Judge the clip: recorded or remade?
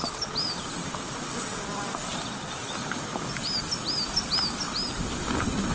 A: recorded